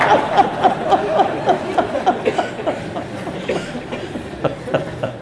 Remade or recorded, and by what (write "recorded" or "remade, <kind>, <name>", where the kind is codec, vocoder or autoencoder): recorded